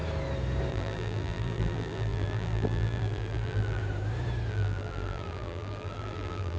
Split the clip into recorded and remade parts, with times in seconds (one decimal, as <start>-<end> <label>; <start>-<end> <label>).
0.0-0.7 recorded; 0.7-3.8 remade; 3.8-4.5 recorded; 4.5-6.6 remade